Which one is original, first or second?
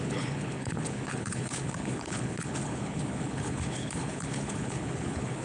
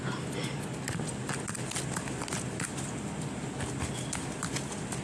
second